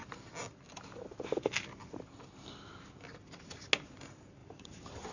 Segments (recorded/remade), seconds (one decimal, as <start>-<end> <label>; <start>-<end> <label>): 0.0-4.4 recorded; 4.4-5.1 remade